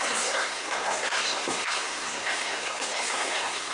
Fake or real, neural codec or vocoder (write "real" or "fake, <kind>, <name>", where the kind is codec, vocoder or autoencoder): fake, codec, SNAC